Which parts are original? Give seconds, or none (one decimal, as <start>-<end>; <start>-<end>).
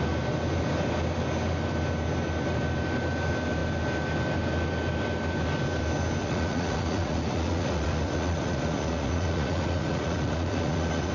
0.0-6.2